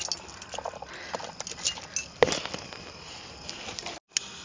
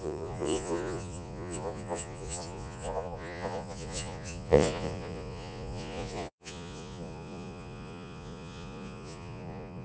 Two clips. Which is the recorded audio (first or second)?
first